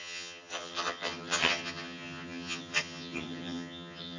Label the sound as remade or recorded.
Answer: remade